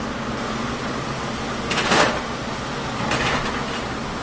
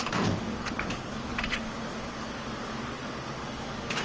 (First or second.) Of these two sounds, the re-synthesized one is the second